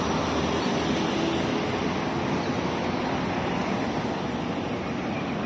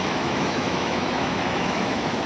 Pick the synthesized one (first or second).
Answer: second